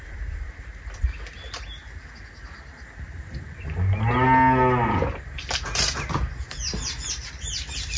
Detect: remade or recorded recorded